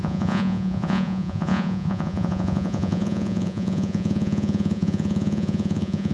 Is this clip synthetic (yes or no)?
yes